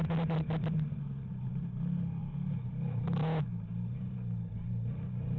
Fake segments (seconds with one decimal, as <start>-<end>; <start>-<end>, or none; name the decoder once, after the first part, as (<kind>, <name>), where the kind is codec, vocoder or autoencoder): none